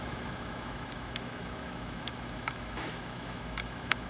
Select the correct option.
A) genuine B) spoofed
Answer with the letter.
B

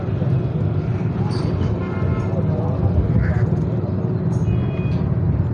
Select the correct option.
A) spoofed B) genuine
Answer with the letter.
B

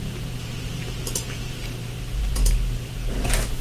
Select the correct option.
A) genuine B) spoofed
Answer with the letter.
B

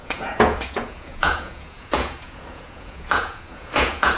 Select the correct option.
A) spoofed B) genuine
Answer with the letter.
A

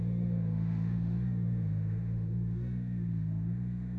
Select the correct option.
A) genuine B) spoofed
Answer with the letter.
B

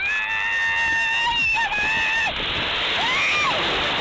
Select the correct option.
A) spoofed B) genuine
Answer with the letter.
B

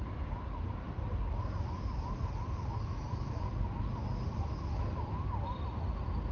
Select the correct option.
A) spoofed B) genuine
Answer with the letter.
B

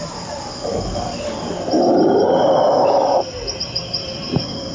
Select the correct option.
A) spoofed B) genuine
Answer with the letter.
B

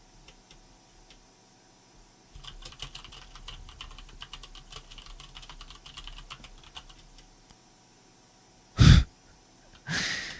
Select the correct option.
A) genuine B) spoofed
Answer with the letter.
A